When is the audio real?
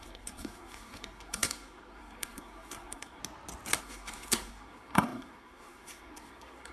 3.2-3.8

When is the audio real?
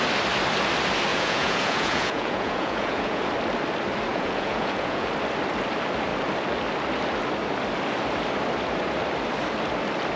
0.0-1.1; 3.2-4.1; 5.1-10.2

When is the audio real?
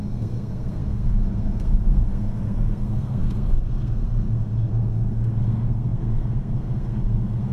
none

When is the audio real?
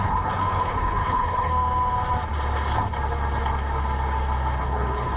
1.5-4.6